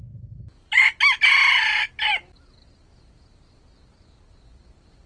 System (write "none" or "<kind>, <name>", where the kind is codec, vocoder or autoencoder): none